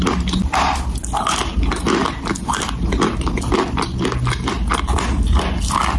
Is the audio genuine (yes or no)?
yes